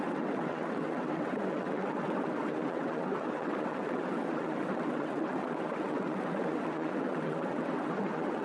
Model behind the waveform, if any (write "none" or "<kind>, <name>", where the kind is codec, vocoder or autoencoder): vocoder, WaveNeXt